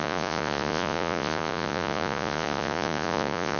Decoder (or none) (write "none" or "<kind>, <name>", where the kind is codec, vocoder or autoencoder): vocoder, Vocos